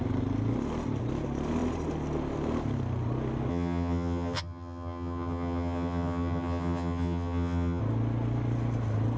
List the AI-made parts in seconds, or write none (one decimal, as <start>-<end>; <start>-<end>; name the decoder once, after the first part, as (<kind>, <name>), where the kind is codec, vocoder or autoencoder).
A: 3.5-7.8 (vocoder, HiFi-GAN)